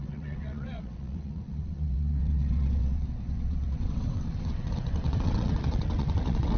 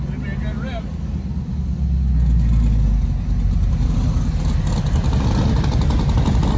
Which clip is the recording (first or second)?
second